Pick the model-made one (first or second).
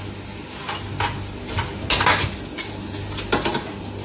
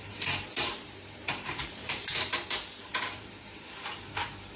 second